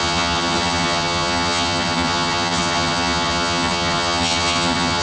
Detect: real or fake fake